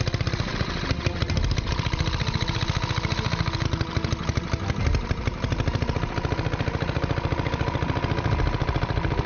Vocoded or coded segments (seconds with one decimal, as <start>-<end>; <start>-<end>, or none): none